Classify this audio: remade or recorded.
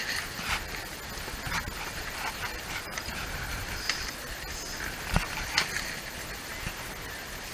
recorded